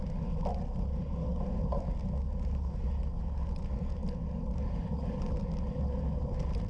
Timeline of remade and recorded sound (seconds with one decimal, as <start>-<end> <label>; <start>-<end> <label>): 0.0-6.7 recorded